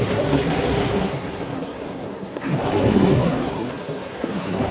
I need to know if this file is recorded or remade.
remade